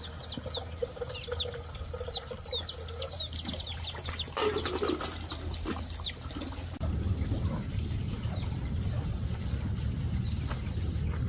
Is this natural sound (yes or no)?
yes